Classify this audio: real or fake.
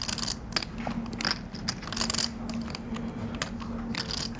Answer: real